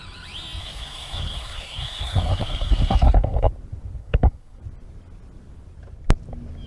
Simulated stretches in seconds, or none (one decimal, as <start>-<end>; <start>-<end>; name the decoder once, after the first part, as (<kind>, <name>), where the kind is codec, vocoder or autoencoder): 0.6-3.5 (codec, SNAC); 4.0-4.6